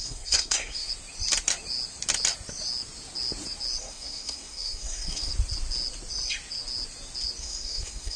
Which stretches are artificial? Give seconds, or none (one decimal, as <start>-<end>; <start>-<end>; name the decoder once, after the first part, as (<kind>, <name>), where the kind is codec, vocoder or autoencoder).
0.0-0.9 (codec, SNAC); 3.8-5.3; 7.4-8.2